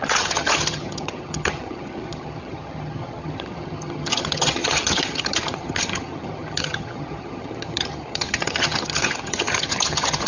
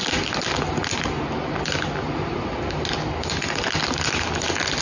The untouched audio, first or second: second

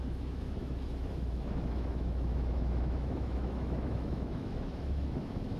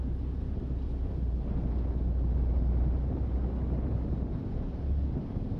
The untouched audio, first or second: second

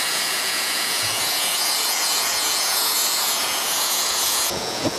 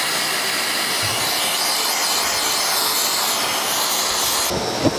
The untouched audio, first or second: second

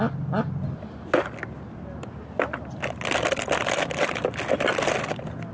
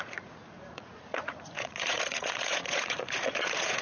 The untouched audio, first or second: first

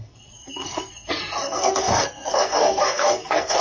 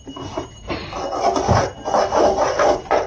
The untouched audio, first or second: second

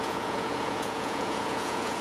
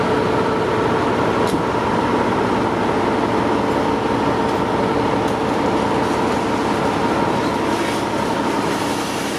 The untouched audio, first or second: second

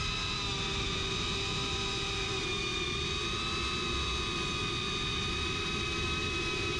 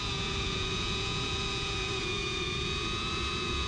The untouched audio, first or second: first